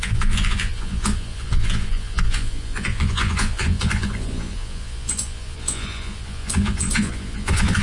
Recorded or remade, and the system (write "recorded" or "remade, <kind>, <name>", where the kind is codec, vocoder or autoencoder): remade, vocoder, Vocos